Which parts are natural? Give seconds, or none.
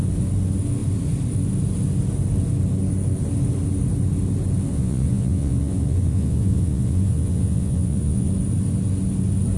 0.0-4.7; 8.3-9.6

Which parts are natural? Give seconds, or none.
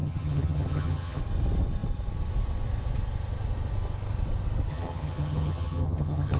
1.2-4.7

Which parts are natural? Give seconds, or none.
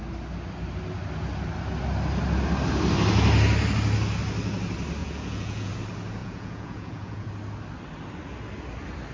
0.0-5.0; 5.7-6.2; 7.3-9.1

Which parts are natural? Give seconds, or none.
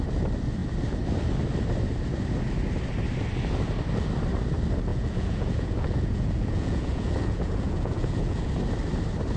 0.0-4.9; 8.5-9.4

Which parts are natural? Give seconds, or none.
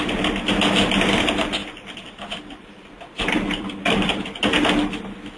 0.0-1.6; 4.2-5.4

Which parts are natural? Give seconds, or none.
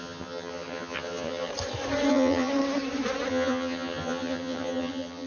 1.5-2.1; 2.5-3.3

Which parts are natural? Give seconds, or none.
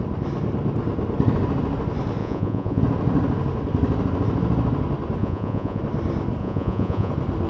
0.0-2.2; 2.8-5.2; 5.8-6.4; 7.1-7.5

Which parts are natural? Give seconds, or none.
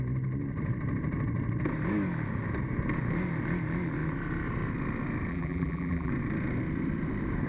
0.0-5.3; 6.1-7.5